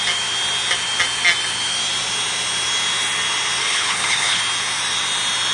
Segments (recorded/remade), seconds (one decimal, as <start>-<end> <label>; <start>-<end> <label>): 0.0-3.6 recorded; 3.6-4.4 remade; 4.4-5.5 recorded